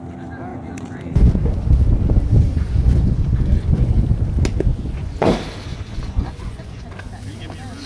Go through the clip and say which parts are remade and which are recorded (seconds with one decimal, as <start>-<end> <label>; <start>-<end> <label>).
0.0-0.5 recorded; 0.5-1.3 remade; 1.3-2.5 recorded; 2.5-3.9 remade; 3.9-4.7 recorded; 4.7-5.3 remade; 5.3-5.7 recorded; 5.7-6.9 remade; 6.9-7.9 recorded